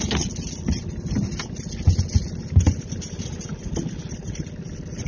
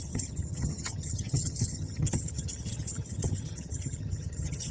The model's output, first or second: second